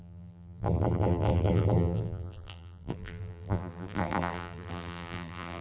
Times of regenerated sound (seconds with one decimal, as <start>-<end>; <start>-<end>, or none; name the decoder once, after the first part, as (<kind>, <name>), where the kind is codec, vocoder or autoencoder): 0.0-5.6 (vocoder, BigVGAN v2)

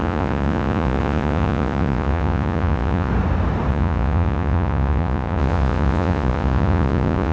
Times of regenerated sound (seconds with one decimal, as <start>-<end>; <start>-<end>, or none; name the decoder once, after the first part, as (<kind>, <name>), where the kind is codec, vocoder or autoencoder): 0.0-3.1 (vocoder, Vocos); 3.7-7.3

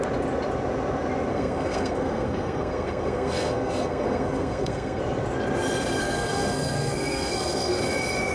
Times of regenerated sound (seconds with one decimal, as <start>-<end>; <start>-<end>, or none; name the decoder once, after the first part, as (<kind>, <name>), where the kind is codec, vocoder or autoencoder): 1.3-5.0 (codec, SNAC); 6.0-7.8

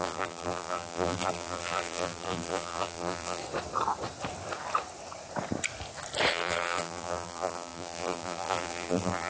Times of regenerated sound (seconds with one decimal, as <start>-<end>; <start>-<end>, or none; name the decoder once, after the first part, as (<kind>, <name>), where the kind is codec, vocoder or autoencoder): 0.0-3.4 (vocoder, BigVGAN v2); 6.3-9.3